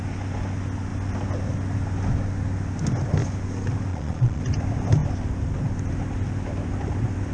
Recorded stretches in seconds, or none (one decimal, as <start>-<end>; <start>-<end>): 0.0-3.9; 4.4-7.3